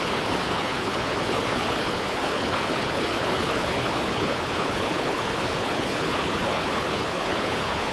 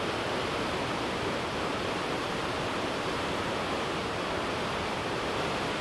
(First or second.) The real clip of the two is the second